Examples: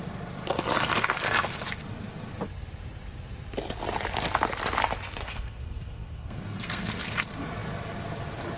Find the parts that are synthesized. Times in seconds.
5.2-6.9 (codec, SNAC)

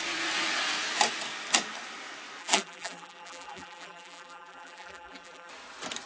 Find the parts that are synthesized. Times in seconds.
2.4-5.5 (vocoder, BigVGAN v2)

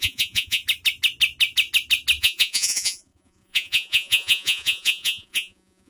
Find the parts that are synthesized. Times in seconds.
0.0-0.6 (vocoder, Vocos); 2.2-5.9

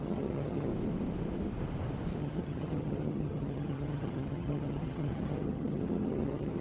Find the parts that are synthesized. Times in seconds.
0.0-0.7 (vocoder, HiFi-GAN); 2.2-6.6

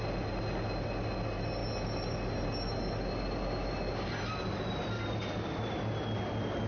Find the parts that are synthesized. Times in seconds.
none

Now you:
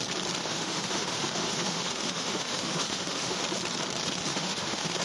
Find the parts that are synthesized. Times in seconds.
0.4-3.4 (autoencoder, DAC-VAE); 4.3-5.0

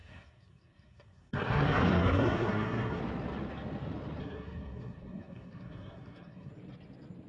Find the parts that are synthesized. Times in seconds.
0.0-3.0 (codec, SNAC); 4.2-6.5

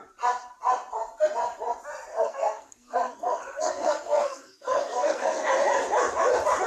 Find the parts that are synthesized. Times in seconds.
2.1-5.5 (codec, SNAC)